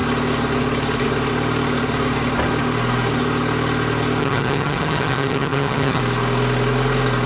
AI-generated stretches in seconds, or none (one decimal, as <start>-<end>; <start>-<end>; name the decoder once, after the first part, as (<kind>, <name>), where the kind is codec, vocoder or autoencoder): 4.2-6.0 (vocoder, HiFi-GAN)